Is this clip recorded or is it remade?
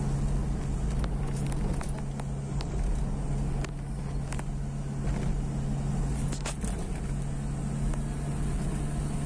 recorded